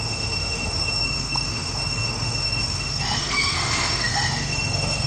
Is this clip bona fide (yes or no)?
no